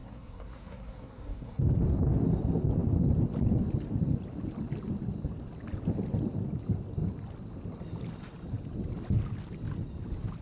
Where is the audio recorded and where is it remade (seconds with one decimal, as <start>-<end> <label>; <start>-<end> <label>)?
0.0-1.6 remade; 1.6-10.4 recorded